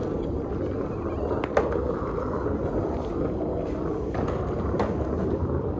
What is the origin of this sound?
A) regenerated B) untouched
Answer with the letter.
B